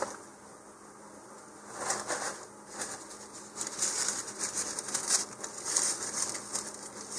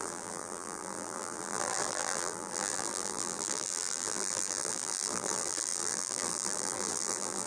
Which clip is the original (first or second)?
first